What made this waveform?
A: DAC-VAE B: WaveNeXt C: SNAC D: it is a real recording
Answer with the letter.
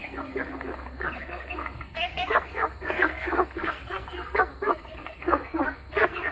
C